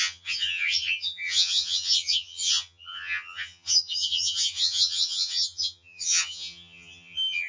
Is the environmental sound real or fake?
fake